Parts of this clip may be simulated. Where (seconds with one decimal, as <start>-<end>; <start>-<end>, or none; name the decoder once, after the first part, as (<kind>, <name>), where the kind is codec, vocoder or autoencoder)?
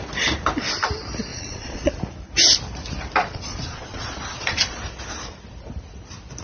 1.3-1.9 (vocoder, Vocos); 3.2-4.8